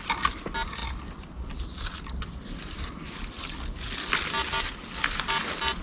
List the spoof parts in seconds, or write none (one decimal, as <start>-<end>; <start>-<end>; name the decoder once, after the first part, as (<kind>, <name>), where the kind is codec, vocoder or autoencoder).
none